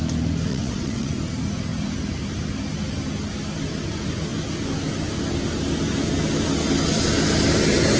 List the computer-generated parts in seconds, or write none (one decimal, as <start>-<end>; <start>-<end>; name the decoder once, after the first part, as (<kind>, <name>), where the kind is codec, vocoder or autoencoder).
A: 0.5-1.1 (vocoder, WaveNeXt)